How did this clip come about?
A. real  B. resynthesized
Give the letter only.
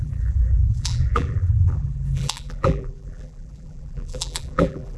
B